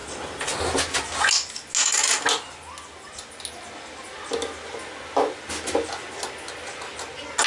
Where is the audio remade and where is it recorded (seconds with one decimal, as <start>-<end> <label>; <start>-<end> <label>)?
0.0-7.5 recorded